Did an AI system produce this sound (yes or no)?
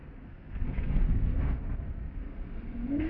yes